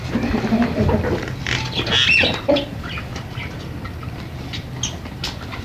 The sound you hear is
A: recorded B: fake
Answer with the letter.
A